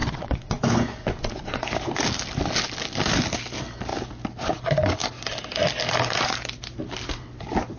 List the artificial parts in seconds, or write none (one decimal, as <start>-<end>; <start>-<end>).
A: 0.0-2.0